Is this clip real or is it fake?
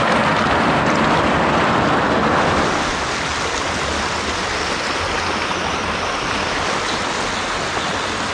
real